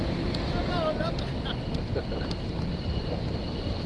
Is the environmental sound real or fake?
fake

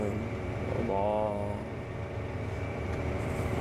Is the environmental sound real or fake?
fake